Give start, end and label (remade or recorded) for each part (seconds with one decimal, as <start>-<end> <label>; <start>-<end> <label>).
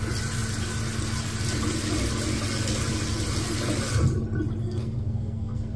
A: 0.0-4.6 recorded; 4.6-5.8 remade